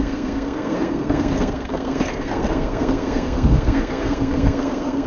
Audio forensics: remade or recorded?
remade